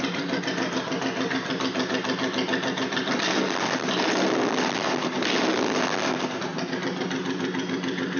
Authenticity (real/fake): real